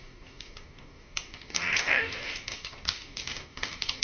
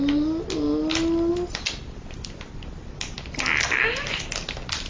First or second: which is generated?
first